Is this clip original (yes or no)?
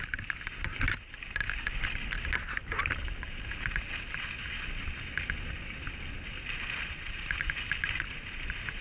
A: yes